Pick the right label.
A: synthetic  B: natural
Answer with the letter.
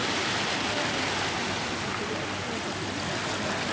B